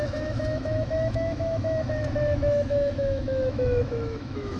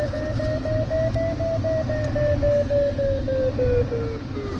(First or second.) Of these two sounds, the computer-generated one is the first